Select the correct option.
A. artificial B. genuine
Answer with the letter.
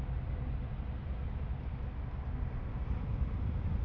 B